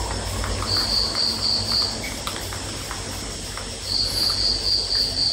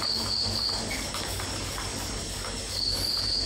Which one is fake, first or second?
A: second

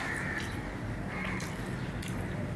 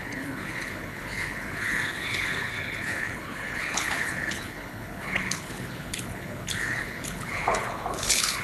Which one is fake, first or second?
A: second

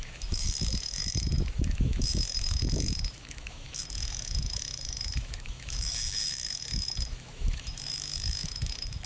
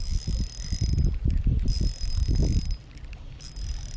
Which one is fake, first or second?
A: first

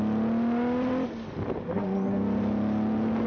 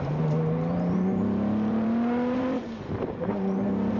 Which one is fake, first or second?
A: second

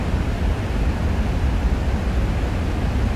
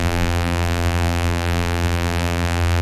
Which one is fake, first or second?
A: second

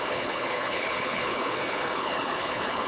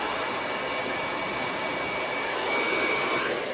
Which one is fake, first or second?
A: first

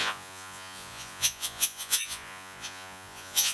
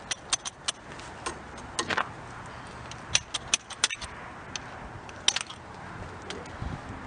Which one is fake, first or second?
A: first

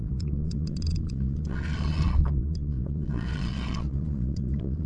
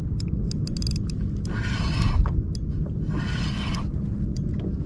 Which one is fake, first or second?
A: first